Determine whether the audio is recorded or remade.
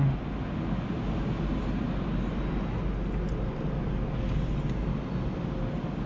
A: recorded